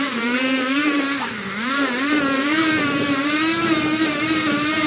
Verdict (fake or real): fake